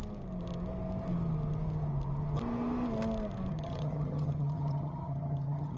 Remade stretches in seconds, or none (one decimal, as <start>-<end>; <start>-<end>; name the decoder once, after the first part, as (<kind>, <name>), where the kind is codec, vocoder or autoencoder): 3.5-5.8 (vocoder, HiFi-GAN)